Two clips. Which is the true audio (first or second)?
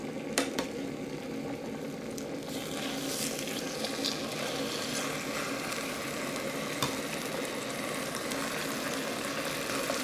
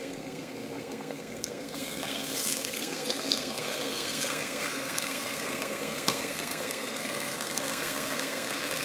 first